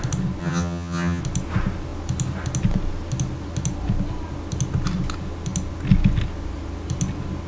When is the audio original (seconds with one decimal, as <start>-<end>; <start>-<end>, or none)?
0.0-0.4; 1.2-7.5